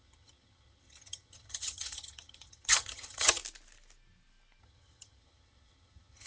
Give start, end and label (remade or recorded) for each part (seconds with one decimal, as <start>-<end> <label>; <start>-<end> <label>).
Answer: 0.0-3.4 remade; 3.4-4.6 recorded; 4.6-6.3 remade